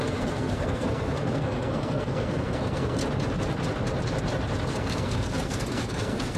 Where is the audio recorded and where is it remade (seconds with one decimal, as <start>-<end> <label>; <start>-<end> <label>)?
0.0-3.0 remade; 3.0-4.7 recorded; 4.7-6.4 remade